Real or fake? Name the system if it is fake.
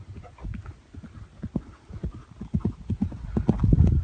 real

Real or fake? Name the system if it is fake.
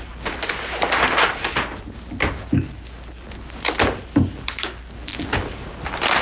real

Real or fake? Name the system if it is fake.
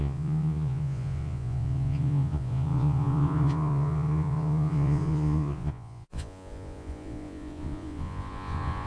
fake, vocoder, Vocos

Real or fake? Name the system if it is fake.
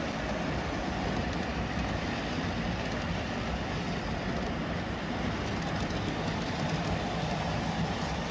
real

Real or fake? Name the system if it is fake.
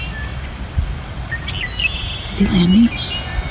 real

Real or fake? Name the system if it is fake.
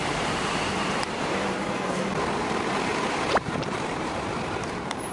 fake, vocoder, BigVGAN v2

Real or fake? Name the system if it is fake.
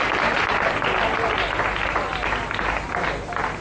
real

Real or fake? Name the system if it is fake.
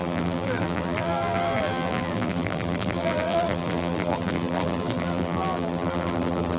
fake, vocoder, BigVGAN v2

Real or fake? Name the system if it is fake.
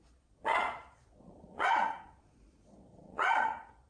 fake, vocoder, Vocos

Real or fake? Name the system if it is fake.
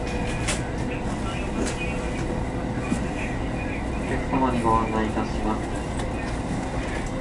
real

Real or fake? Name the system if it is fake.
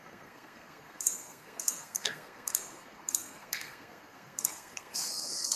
fake, codec, SNAC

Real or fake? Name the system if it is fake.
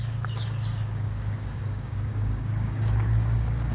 fake, codec, DAC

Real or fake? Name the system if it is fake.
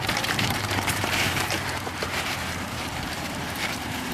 fake, vocoder, BigVGAN v2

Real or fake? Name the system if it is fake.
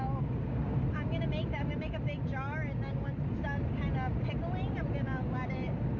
real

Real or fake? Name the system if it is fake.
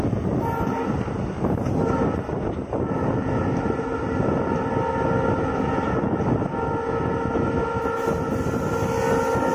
real